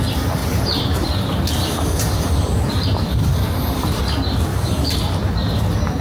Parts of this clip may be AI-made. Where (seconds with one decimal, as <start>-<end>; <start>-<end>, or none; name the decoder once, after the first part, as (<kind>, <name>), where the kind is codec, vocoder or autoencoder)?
0.4-4.0 (vocoder, BigVGAN v2); 4.5-5.0